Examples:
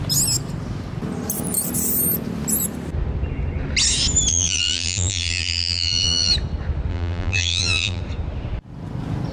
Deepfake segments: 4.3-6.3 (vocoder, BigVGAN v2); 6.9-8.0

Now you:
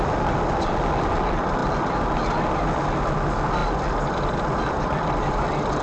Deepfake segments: 0.0-5.8 (vocoder, BigVGAN v2)

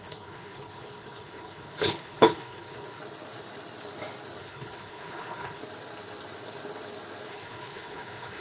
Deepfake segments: 0.0-3.0 (codec, HILCodec); 4.4-5.6; 7.3-8.4

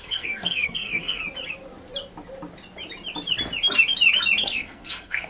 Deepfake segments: 0.0-1.2 (codec, SNAC); 4.4-5.3

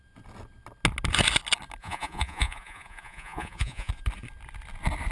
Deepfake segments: 1.8-3.9 (vocoder, Vocos)

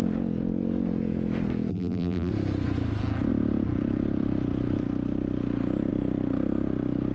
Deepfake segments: 1.7-2.3 (vocoder, BigVGAN v2)